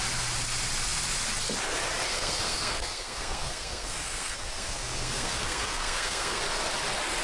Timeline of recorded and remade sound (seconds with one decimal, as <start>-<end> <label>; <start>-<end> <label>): 0.0-2.1 recorded; 2.1-6.4 remade; 6.4-7.2 recorded

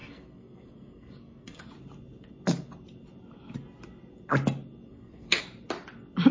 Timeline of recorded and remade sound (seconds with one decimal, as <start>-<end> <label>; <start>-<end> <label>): 0.0-1.7 remade; 1.7-4.9 recorded; 4.9-5.4 remade; 5.4-6.3 recorded

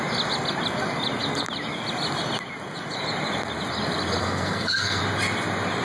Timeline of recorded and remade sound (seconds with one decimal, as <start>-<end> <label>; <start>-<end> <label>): 0.0-4.2 recorded; 4.2-5.0 remade; 5.0-5.8 recorded